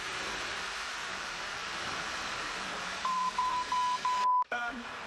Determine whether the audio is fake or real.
fake